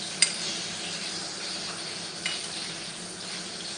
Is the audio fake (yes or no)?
no